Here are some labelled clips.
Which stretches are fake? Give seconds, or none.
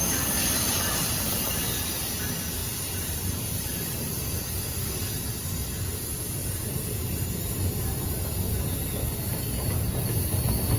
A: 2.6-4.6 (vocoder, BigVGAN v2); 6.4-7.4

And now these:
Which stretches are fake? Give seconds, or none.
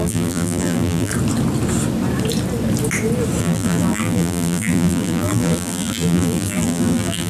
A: 0.0-1.1 (vocoder, BigVGAN v2); 3.4-7.3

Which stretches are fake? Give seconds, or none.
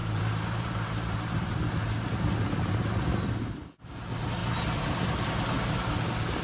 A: 0.0-1.7 (vocoder, BigVGAN v2)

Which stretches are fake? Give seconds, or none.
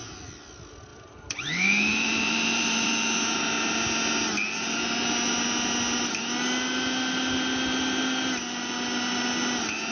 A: 0.9-2.9 (vocoder, BigVGAN v2)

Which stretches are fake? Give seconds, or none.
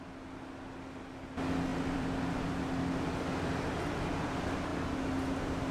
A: 1.7-2.6 (vocoder, BigVGAN v2)